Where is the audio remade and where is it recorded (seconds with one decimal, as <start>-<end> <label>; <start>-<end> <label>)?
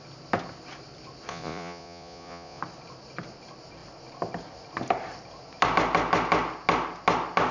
0.0-1.3 recorded; 1.3-2.6 remade; 2.6-7.5 recorded